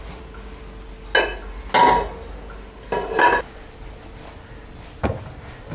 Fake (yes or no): no